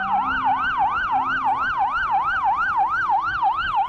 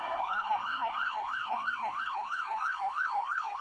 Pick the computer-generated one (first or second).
second